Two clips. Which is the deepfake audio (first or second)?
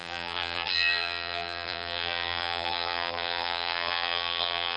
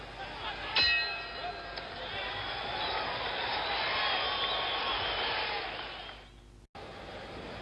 first